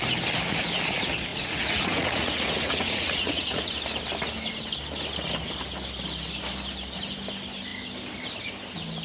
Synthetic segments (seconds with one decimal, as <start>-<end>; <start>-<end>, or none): 1.3-3.7